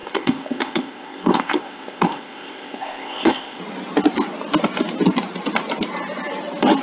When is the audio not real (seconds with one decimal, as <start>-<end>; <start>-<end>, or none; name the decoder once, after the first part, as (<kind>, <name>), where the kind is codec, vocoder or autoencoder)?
0.0-3.6 (codec, ZipCodec)